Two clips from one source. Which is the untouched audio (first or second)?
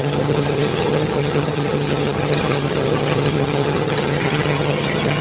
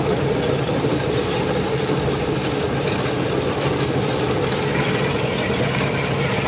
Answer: second